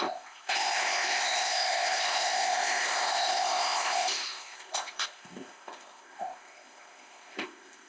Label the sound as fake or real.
fake